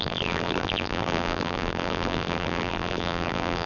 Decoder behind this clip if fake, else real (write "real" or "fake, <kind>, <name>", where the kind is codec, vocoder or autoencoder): fake, vocoder, BigVGAN v2